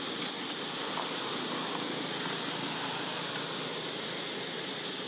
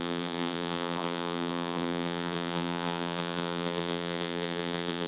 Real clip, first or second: first